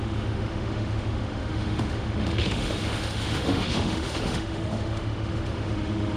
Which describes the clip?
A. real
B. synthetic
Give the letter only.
B